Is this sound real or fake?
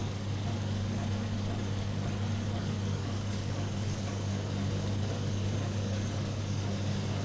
fake